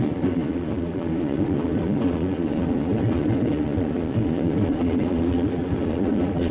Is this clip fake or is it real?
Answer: fake